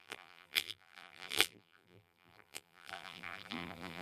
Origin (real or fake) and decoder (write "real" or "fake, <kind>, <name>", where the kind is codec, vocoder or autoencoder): fake, vocoder, BigVGAN v2